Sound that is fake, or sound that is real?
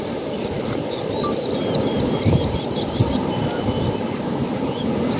real